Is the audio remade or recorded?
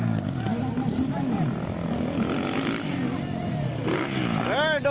recorded